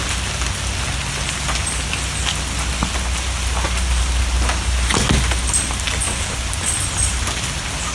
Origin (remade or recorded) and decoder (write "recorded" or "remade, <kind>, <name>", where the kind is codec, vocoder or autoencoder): recorded